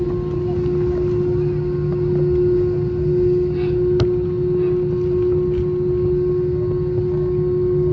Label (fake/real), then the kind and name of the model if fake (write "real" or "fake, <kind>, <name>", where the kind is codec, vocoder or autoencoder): real